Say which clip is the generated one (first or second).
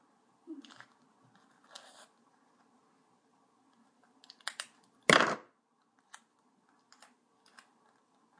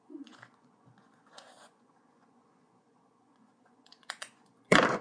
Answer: second